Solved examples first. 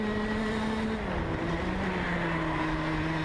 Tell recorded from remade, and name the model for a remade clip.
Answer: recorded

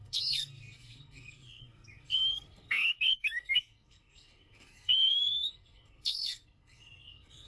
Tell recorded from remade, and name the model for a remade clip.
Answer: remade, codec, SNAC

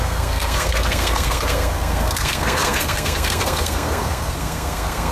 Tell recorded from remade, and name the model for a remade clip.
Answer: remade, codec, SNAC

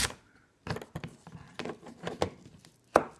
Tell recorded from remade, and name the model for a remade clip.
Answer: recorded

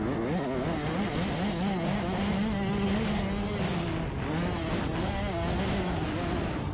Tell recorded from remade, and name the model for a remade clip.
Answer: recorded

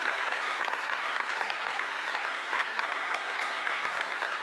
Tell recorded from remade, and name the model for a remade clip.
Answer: remade, codec, SNAC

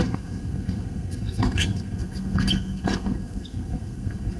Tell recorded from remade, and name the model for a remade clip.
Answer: remade, codec, SNAC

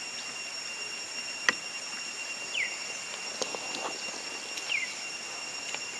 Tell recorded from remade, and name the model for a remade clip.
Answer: recorded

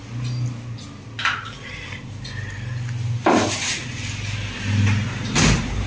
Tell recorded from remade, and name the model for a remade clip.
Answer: recorded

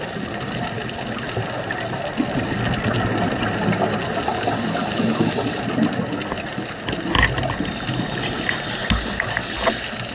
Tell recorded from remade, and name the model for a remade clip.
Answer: recorded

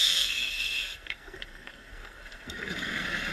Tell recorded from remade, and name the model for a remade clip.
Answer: remade, codec, SNAC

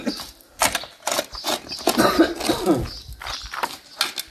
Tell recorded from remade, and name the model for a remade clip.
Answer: recorded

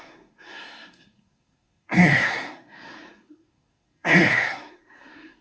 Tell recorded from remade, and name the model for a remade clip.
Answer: remade, codec, SNAC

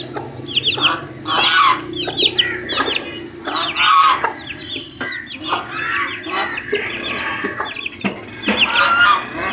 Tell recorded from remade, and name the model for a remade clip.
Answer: recorded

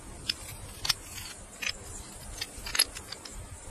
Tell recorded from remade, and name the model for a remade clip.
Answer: recorded